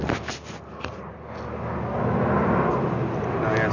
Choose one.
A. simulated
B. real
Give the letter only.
B